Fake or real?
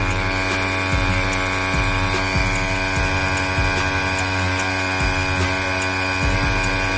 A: real